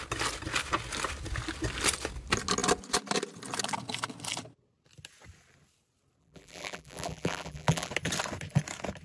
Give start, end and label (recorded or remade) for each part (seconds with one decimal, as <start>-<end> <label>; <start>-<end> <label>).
0.0-6.2 recorded; 6.2-7.9 remade; 7.9-9.0 recorded